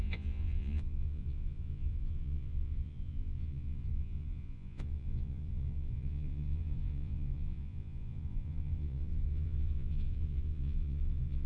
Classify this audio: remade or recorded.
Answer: remade